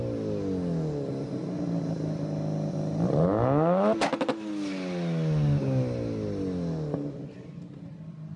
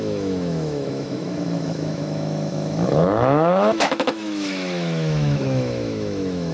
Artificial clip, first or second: second